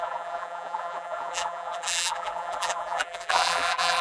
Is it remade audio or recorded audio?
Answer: remade